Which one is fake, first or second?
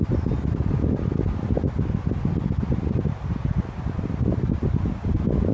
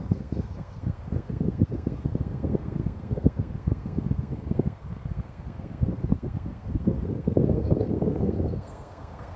second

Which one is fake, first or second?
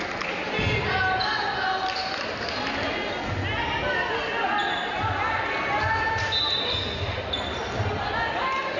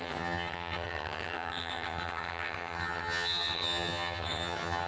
second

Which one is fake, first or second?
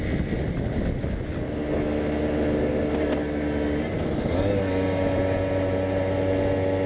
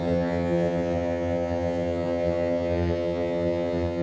second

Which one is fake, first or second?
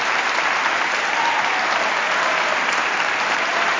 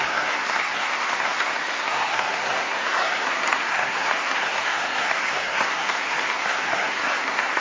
second